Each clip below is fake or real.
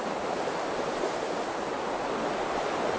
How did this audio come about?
real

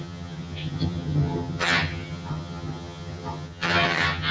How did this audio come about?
fake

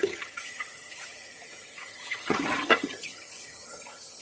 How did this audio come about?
fake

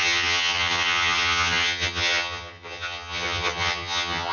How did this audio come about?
fake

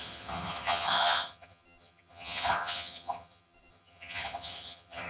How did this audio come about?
fake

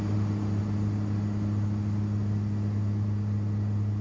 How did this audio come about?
real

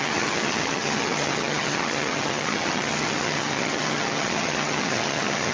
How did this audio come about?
fake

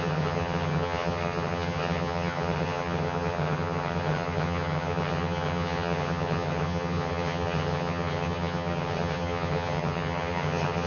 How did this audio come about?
fake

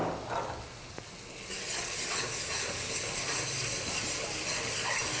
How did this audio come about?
real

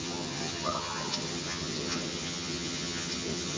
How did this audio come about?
fake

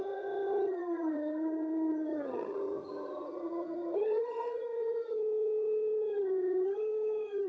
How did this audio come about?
fake